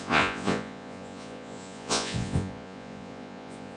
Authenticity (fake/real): fake